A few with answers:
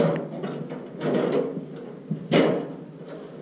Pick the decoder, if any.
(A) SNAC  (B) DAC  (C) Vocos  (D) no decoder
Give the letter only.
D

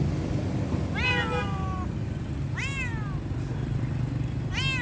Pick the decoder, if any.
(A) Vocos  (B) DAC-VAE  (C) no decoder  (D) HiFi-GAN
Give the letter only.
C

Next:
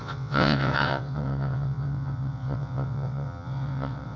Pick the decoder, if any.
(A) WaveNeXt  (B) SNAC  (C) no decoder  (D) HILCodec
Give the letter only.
A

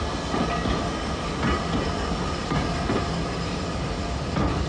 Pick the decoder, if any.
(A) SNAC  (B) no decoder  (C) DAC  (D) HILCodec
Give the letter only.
B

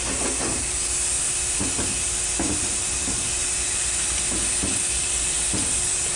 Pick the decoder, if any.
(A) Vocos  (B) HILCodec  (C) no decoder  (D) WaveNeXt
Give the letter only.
C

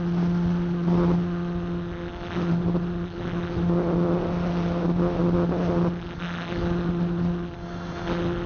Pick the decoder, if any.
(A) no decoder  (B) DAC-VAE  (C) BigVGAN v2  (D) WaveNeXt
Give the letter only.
A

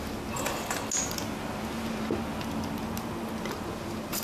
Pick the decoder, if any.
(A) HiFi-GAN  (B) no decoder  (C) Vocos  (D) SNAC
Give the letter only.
B